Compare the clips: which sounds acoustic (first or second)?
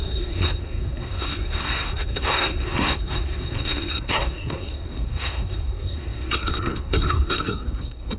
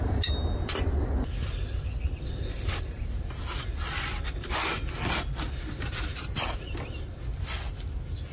second